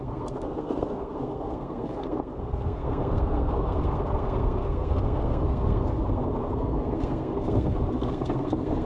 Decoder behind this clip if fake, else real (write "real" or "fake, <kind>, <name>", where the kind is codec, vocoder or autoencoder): fake, codec, SNAC